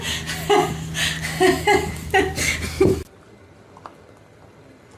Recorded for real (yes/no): yes